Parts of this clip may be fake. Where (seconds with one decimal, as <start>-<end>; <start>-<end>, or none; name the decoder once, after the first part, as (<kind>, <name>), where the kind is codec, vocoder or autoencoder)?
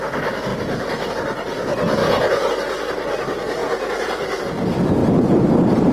2.0-2.5 (vocoder, Vocos); 3.6-4.4